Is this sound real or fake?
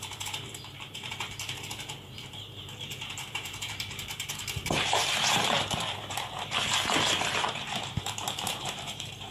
fake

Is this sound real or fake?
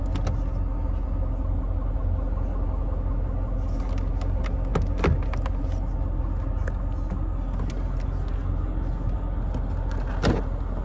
real